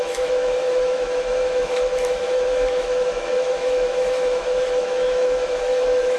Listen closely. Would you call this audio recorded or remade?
remade